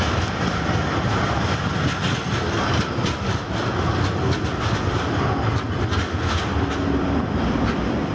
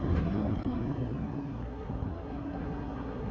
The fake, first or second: second